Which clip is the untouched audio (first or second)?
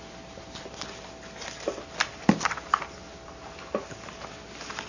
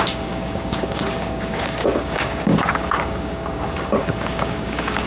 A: first